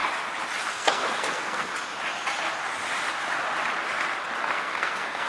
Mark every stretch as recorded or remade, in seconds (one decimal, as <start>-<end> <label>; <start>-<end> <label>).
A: 0.0-0.7 recorded; 0.7-1.7 remade; 1.7-4.4 recorded; 4.4-5.3 remade